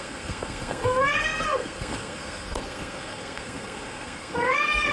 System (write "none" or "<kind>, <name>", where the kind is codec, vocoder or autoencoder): codec, SNAC